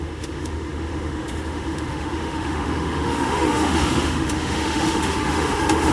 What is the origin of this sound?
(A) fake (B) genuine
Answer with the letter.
A